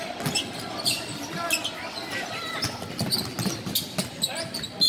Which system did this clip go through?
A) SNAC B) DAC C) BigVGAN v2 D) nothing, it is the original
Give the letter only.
D